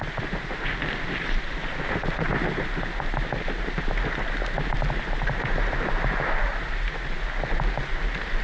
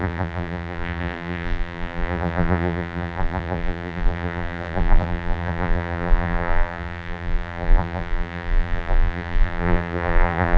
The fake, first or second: second